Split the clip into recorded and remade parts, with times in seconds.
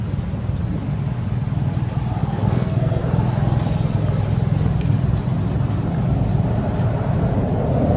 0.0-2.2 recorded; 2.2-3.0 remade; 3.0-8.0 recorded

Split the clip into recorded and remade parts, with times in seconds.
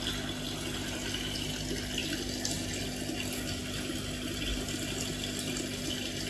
0.0-6.3 recorded